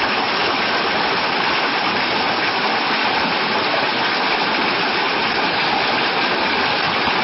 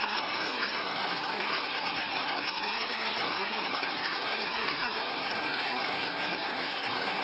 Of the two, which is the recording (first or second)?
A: first